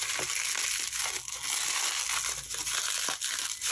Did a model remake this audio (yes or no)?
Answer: no